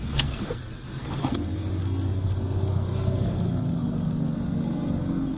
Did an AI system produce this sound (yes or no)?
yes